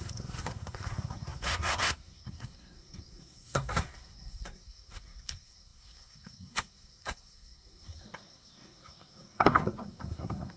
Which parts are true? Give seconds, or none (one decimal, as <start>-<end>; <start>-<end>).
none